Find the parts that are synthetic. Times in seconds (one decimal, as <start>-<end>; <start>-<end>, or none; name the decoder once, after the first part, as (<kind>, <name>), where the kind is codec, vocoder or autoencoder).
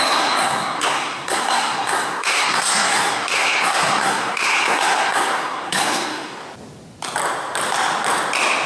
0.0-6.4 (codec, SNAC)